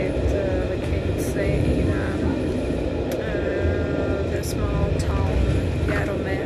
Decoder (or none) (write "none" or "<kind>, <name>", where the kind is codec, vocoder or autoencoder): none